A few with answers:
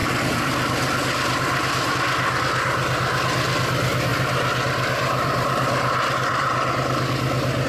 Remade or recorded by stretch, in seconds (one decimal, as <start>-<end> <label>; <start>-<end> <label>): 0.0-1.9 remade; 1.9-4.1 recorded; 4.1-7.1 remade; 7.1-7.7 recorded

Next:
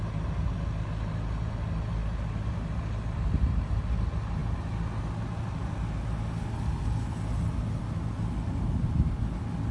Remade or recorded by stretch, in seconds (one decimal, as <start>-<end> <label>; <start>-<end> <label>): 0.0-9.7 recorded

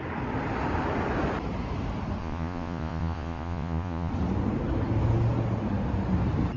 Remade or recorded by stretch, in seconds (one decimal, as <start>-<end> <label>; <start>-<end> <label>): 0.0-2.2 recorded; 2.2-4.1 remade; 4.1-6.6 recorded